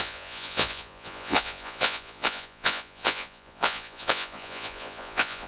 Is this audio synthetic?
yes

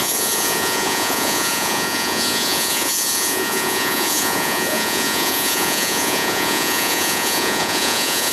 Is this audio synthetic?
yes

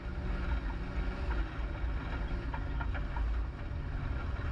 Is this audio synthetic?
no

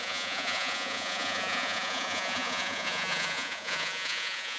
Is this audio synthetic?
yes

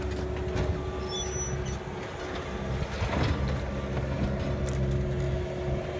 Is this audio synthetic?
no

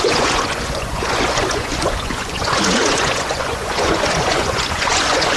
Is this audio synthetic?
yes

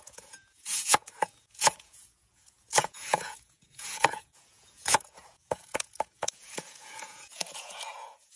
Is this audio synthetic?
yes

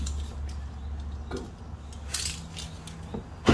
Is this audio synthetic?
no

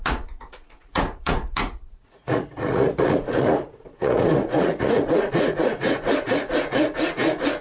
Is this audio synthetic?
yes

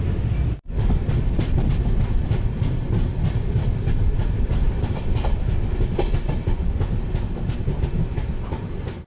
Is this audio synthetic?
no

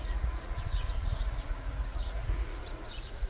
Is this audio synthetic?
yes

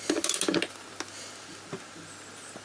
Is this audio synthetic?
no